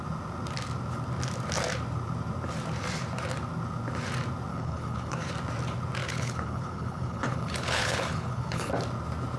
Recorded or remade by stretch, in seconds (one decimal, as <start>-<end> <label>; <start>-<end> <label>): 0.0-4.5 recorded; 4.5-5.3 remade; 5.3-6.0 recorded; 6.0-8.7 remade; 8.7-9.4 recorded